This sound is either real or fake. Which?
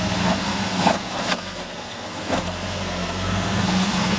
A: fake